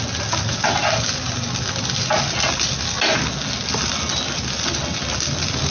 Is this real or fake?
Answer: real